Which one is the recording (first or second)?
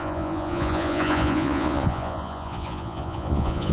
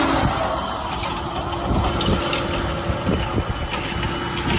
second